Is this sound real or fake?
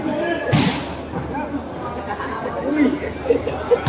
real